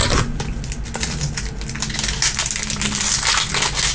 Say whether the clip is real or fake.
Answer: real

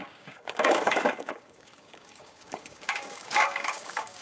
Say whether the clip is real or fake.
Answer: fake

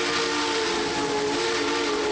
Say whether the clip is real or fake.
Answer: real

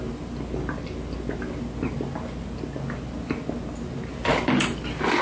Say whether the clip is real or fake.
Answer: real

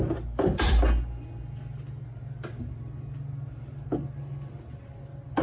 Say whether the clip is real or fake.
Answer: real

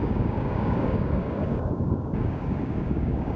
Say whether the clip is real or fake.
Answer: fake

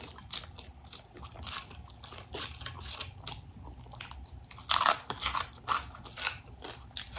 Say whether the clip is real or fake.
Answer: real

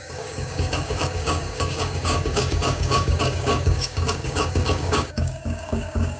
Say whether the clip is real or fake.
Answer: fake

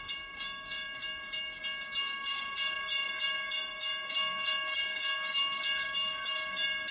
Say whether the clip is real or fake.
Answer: fake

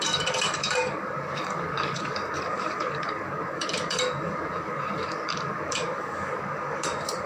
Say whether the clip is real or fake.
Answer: fake